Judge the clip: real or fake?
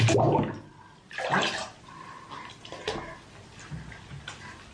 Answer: real